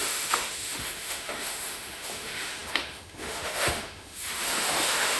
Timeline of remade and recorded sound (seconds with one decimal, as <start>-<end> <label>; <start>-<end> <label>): 0.0-5.2 remade